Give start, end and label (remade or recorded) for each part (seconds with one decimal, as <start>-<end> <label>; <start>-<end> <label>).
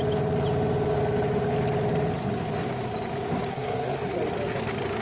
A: 0.0-3.5 recorded; 3.5-4.1 remade; 4.1-5.0 recorded